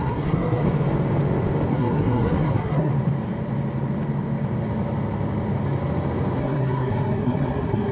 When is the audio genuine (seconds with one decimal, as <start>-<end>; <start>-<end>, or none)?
0.6-1.7; 2.9-6.4